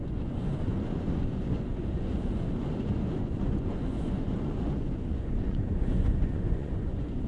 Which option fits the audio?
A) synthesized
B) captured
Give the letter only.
A